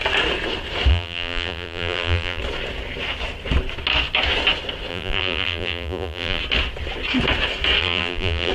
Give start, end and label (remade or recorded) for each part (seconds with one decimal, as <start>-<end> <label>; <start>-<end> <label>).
0.0-0.9 recorded; 0.9-2.4 remade; 2.4-4.9 recorded; 4.9-6.4 remade; 6.4-7.8 recorded; 7.8-8.5 remade